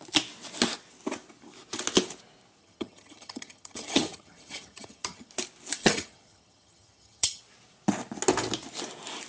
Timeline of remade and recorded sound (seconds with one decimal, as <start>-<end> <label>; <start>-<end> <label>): 0.0-2.6 recorded; 2.6-5.3 remade; 5.3-5.8 recorded; 5.8-7.4 remade; 7.4-9.3 recorded